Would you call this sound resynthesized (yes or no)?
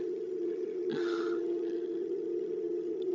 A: yes